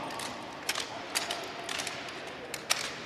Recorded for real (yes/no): yes